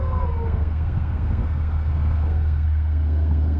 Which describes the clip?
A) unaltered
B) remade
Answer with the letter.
B